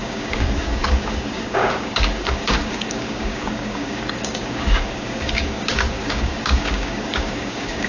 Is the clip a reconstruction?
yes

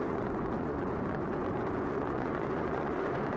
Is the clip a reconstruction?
yes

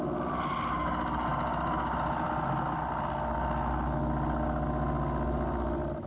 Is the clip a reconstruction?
no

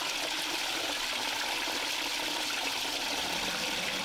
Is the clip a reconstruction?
no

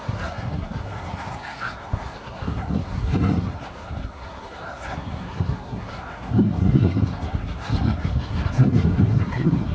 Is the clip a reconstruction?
yes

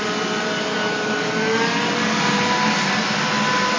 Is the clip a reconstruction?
no